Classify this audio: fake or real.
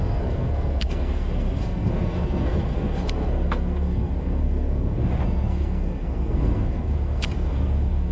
fake